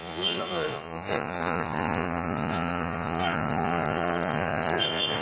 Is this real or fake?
fake